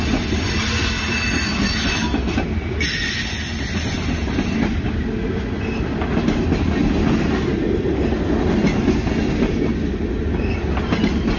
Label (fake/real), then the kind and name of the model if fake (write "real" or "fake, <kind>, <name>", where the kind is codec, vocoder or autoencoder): real